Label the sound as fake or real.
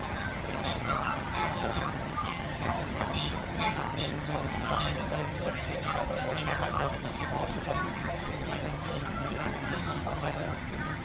fake